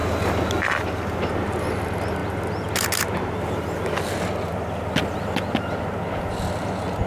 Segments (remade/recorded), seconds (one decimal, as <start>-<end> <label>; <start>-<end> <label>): 0.0-7.1 recorded